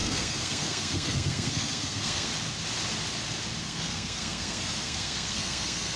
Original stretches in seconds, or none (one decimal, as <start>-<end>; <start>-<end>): 2.3-3.6